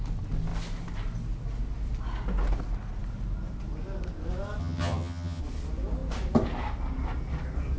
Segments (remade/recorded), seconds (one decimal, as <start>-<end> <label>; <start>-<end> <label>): 0.0-4.6 recorded; 4.6-5.4 remade; 5.4-7.8 recorded